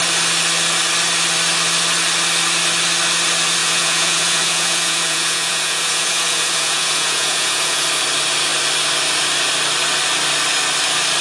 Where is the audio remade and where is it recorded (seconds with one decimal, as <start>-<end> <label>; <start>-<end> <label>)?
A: 0.0-3.6 recorded; 3.6-7.8 remade; 7.8-11.2 recorded